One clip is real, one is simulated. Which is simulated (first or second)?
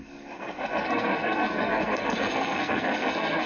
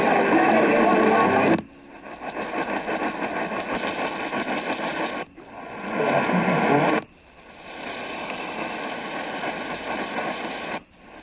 first